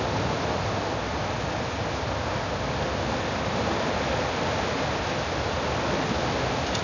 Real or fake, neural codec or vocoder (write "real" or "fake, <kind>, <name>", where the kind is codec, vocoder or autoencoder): real